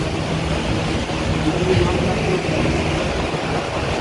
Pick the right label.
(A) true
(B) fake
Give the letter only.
A